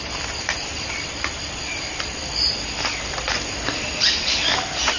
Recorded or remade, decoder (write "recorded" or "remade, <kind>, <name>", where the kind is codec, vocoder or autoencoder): remade, vocoder, BigVGAN v2